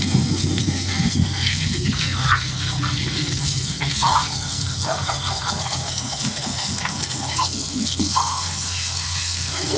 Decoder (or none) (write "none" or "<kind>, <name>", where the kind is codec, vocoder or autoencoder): codec, SNAC